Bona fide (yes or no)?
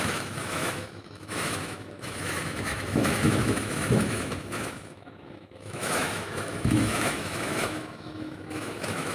no